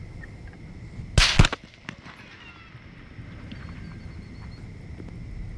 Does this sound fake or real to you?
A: real